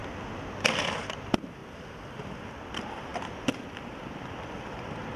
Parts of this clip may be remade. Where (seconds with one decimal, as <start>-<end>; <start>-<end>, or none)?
0.5-5.2

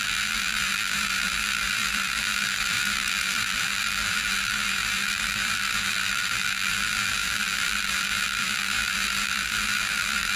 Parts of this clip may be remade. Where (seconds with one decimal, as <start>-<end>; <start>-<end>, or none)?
0.0-10.4

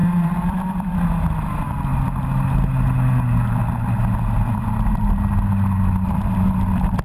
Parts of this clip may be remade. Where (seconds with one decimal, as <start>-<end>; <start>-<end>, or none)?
0.0-1.0

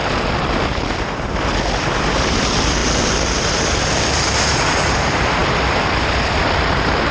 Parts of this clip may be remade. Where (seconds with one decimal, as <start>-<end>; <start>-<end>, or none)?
1.0-2.8; 3.9-7.1

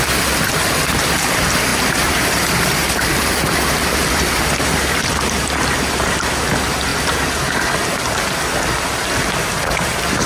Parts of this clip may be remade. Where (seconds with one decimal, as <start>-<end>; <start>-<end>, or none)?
1.7-5.8; 6.9-8.2

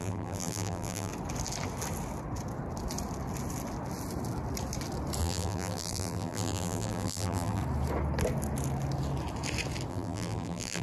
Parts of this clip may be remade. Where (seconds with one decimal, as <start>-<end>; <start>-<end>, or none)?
0.0-1.1; 5.2-7.6; 9.9-10.8

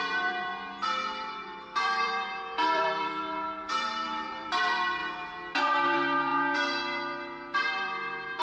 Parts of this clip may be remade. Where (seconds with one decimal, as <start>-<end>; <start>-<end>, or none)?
0.0-5.0; 5.6-8.4

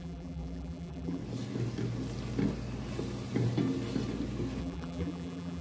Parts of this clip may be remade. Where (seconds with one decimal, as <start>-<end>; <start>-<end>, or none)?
0.0-1.2; 4.6-5.6